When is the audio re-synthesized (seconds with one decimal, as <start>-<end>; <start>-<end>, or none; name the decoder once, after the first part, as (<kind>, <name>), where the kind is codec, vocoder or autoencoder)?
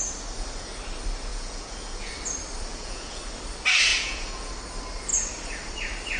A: 1.3-2.1 (vocoder, Vocos); 2.7-3.2; 3.9-4.5